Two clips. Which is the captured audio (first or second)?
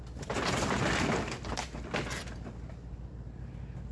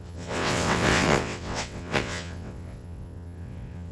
first